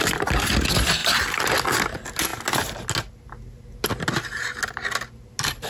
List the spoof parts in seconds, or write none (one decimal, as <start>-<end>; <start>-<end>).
none